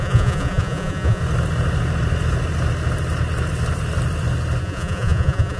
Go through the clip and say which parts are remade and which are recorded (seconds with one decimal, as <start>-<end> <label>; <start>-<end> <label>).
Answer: 0.0-1.2 remade; 1.2-4.6 recorded; 4.6-5.6 remade